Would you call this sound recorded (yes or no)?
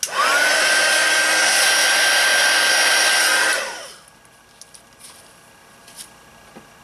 yes